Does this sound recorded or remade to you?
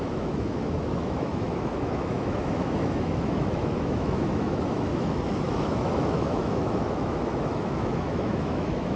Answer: remade